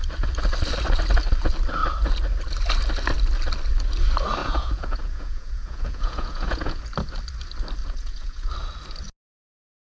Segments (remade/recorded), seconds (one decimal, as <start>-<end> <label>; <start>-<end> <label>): 0.0-4.4 recorded; 4.4-6.8 remade; 6.8-7.8 recorded; 7.8-8.5 remade; 8.5-9.8 recorded